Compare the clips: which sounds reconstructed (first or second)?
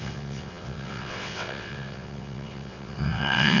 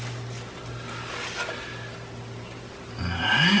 first